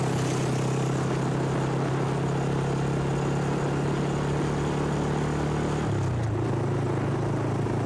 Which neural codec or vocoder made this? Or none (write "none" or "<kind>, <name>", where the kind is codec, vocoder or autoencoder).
none